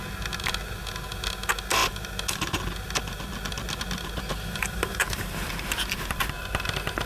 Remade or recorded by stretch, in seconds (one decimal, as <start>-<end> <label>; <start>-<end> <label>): 0.0-4.3 recorded; 4.3-5.5 remade; 5.5-7.1 recorded